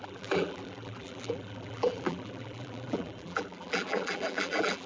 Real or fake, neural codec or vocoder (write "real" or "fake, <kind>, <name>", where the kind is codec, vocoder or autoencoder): fake, vocoder, BigVGAN v2